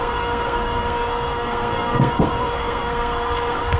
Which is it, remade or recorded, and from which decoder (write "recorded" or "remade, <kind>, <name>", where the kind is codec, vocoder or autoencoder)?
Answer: remade, codec, SNAC